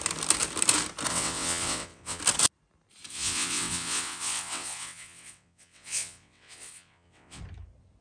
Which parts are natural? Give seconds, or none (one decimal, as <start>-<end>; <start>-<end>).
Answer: 0.0-1.1; 2.2-3.1; 7.4-8.0